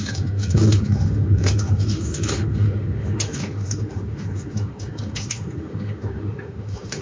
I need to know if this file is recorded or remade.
remade